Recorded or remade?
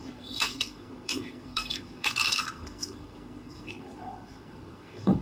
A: remade